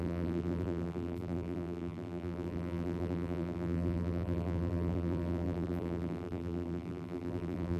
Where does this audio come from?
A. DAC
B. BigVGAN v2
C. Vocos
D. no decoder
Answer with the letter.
B